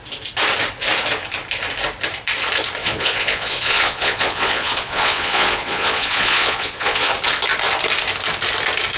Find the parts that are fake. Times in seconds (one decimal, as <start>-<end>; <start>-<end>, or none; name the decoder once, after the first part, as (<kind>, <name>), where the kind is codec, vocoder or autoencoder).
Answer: 2.8-7.1 (vocoder, Vocos)

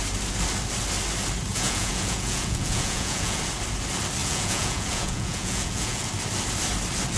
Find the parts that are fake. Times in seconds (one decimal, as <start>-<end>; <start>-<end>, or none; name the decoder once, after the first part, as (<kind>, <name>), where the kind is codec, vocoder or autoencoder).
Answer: 1.5-3.4 (vocoder, Vocos); 4.2-6.1

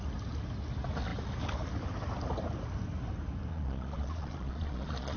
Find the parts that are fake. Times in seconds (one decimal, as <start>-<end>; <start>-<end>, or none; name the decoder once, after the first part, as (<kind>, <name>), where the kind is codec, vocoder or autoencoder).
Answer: 3.5-5.2 (vocoder, Vocos)

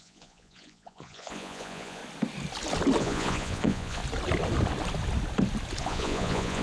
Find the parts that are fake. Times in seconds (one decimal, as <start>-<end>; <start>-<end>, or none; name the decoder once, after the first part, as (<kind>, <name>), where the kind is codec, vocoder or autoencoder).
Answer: 0.0-2.0 (vocoder, Vocos); 3.0-4.0; 5.8-6.6

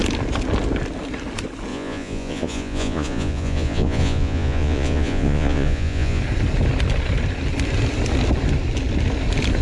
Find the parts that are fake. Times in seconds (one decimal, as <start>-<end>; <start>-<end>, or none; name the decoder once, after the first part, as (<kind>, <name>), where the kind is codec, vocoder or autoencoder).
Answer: 1.7-6.2 (vocoder, Vocos)